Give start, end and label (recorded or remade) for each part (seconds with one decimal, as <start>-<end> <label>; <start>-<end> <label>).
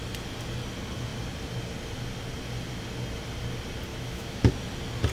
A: 0.0-3.9 recorded; 3.9-4.5 remade; 4.5-5.1 recorded